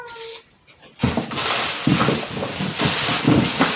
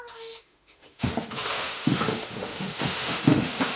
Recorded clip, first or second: first